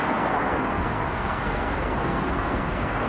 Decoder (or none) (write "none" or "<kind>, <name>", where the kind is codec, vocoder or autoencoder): codec, SNAC